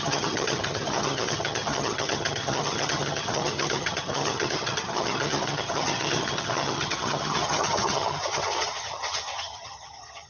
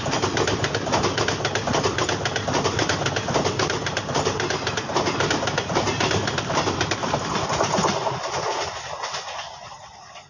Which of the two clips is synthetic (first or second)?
first